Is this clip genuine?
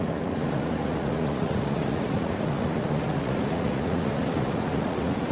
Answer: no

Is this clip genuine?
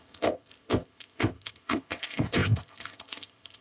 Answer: no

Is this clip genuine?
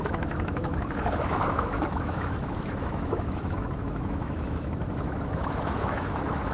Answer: no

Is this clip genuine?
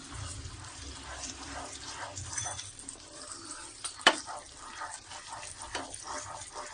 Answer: no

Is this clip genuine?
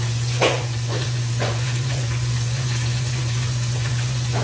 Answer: no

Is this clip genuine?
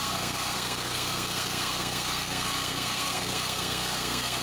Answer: no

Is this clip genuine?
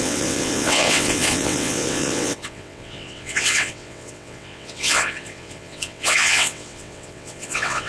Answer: no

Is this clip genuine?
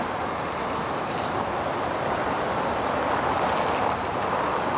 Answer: yes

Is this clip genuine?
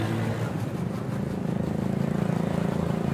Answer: yes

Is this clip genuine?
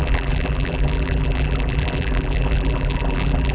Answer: no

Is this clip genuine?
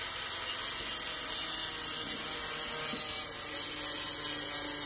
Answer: yes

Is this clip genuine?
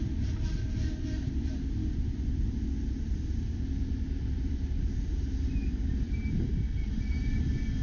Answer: no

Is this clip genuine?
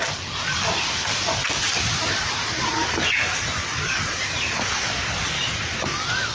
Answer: yes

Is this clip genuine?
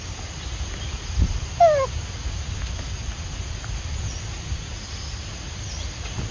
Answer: yes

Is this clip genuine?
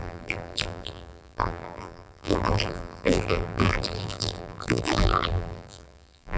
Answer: no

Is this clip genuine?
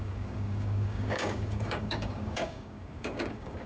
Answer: no